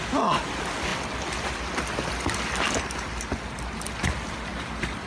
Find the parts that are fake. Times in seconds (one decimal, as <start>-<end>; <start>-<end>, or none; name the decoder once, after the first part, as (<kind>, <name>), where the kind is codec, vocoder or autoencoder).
4.5-5.1 (vocoder, BigVGAN v2)